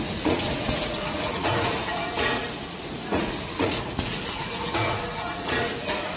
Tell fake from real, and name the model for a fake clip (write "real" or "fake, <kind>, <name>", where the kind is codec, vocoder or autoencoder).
fake, vocoder, Vocos